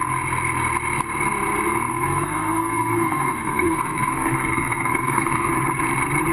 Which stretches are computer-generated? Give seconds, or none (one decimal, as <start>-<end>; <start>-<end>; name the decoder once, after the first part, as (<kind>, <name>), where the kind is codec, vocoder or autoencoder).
1.9-5.5 (codec, SNAC)